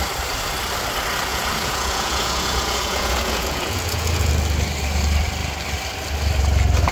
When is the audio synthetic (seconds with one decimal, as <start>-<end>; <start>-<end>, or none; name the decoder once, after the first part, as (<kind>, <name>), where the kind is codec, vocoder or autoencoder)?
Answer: 1.3-4.3 (vocoder, Vocos)